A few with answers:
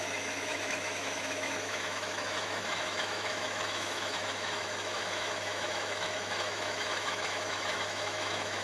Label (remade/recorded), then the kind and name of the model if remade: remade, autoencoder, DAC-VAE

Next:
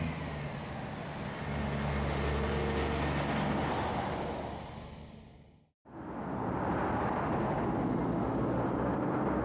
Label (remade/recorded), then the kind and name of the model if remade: recorded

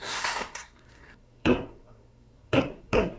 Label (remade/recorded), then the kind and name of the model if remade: remade, codec, SNAC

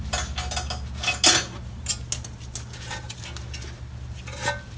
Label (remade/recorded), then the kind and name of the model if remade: recorded